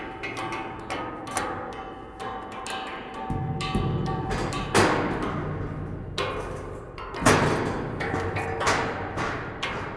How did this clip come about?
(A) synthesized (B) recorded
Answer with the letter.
B